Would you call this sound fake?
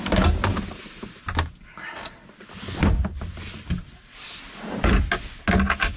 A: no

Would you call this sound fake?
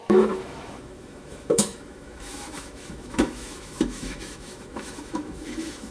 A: yes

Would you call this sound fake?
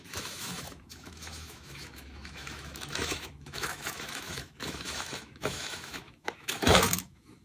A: yes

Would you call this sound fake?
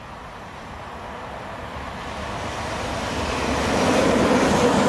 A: no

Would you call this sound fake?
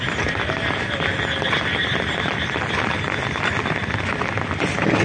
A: no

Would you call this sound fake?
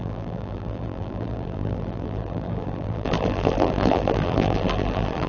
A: yes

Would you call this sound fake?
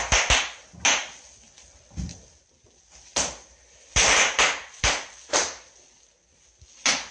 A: no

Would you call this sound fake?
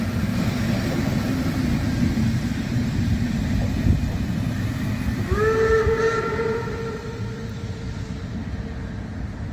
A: no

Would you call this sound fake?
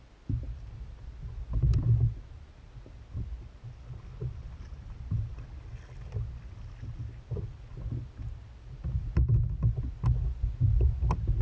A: no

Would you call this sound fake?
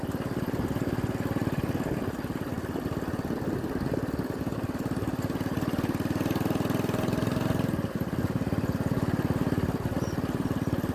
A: no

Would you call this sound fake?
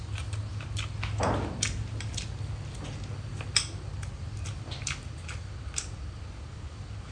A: no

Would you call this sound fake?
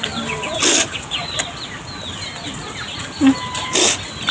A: no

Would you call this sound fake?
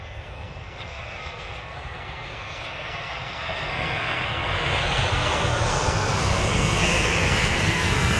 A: yes